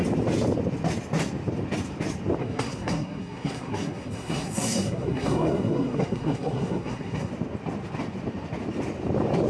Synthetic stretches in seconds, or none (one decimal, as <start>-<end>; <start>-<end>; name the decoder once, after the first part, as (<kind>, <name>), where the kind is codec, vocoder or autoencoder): 2.4-7.3 (codec, SNAC)